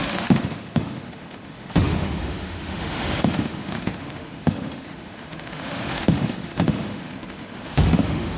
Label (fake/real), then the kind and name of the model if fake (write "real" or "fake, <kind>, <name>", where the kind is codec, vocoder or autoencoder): fake, autoencoder, DAC-VAE